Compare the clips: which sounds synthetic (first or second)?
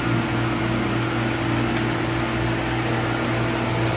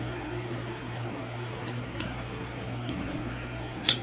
second